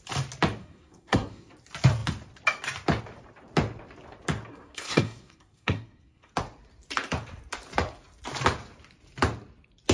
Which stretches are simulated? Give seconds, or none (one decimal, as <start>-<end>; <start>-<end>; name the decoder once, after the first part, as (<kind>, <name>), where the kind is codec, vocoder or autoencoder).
0.6-1.5 (codec, SNAC); 4.5-6.3